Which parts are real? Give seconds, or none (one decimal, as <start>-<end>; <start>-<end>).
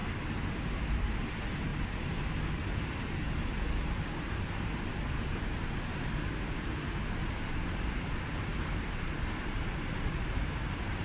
0.0-0.5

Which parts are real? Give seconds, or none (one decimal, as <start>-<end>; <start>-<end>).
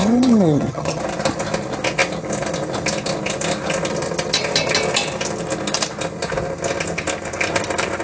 1.0-8.0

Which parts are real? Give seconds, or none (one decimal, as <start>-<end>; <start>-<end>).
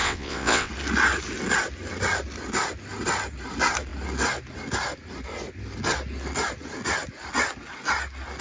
0.7-8.4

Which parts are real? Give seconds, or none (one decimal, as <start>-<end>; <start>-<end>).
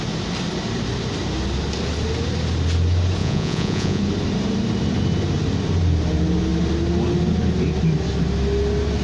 0.0-3.2; 4.0-9.0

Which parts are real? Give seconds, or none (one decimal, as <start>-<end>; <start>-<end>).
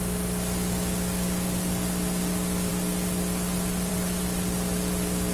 0.0-5.3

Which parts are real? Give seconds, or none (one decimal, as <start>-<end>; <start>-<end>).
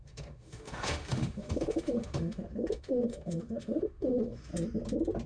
4.5-5.3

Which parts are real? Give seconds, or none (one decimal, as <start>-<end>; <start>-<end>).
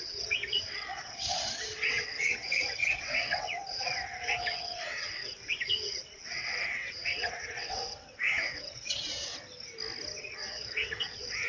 9.3-10.2